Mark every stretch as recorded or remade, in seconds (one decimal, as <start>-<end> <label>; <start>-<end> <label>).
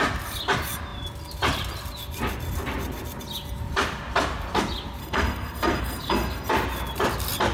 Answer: 0.0-5.0 recorded; 5.0-6.5 remade; 6.5-7.5 recorded